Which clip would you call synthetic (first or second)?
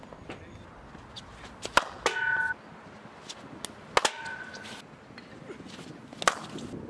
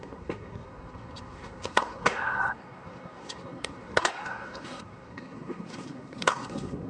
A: second